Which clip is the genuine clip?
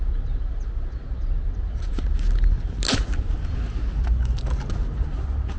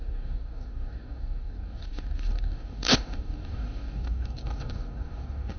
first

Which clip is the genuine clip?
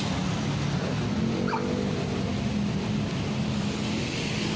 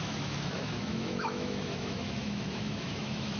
first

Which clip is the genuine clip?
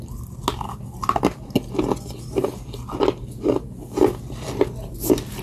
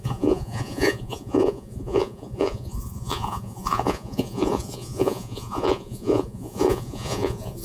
first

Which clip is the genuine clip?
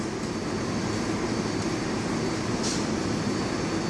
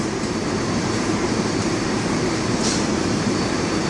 first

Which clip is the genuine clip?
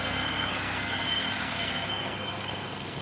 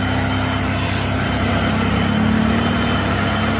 second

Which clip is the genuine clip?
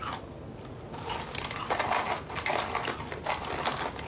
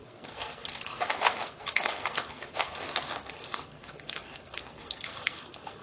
first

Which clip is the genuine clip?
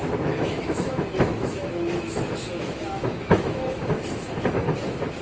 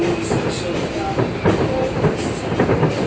second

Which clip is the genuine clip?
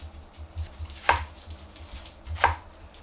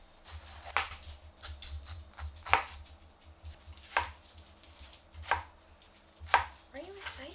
second